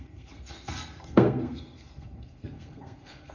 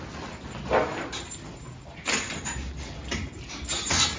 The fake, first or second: first